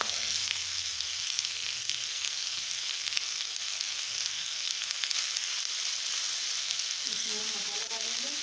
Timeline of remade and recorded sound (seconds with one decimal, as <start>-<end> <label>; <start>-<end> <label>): 0.0-5.5 remade; 5.5-6.6 recorded; 6.6-7.4 remade; 7.4-8.4 recorded